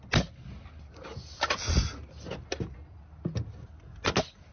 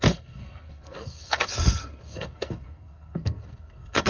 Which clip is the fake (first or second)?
second